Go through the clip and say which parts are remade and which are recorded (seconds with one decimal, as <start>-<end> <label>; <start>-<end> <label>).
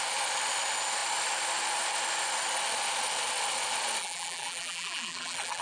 0.0-4.0 recorded; 4.0-5.6 remade